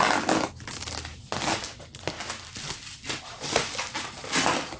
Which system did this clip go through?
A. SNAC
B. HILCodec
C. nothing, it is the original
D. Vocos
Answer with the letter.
C